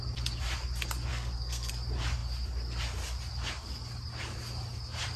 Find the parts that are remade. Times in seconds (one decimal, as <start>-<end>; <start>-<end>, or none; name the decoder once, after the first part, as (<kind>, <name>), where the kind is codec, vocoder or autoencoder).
1.1-1.7 (codec, SNAC)